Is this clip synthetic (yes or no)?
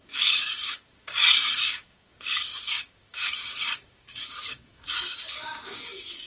yes